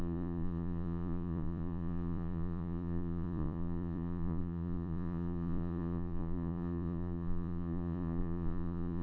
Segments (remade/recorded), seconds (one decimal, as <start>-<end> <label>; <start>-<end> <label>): 0.0-9.0 remade